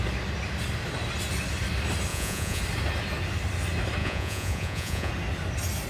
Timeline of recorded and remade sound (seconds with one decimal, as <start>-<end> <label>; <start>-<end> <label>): 0.0-2.1 recorded; 2.1-2.6 remade; 2.6-4.0 recorded; 4.0-5.1 remade; 5.1-5.9 recorded